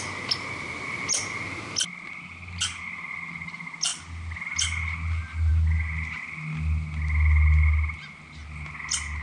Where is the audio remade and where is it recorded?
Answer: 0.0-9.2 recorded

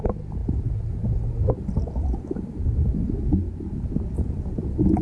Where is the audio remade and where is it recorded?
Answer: 0.0-5.0 recorded